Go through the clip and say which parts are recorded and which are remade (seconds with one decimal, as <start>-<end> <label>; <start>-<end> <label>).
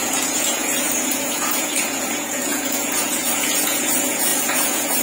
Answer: 0.0-5.0 remade